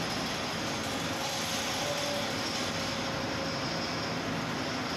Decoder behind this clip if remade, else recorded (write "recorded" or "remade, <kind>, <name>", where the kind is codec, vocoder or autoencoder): recorded